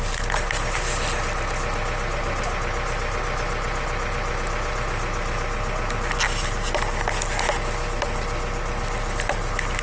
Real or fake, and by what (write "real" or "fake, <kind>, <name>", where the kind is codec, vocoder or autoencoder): real